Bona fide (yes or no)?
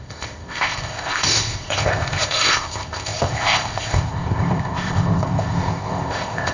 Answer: no